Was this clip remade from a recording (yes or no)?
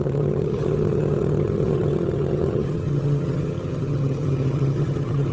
yes